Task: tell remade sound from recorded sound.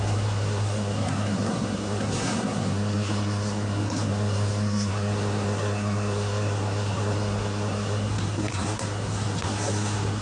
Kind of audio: remade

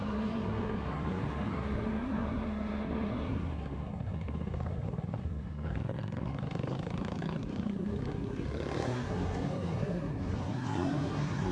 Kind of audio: remade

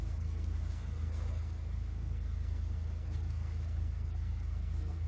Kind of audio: remade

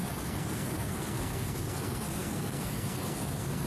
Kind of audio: remade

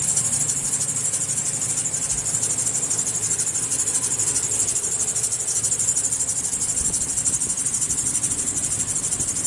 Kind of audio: recorded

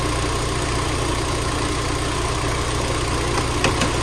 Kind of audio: recorded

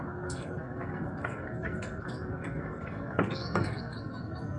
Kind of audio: remade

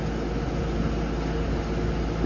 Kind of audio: recorded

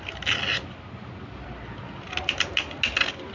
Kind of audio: recorded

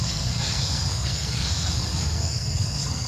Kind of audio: remade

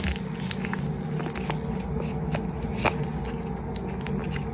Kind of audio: recorded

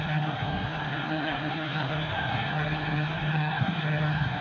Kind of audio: remade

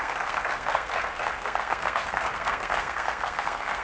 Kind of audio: remade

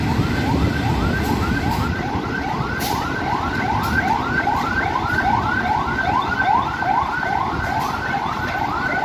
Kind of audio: recorded